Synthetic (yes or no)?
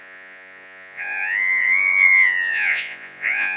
yes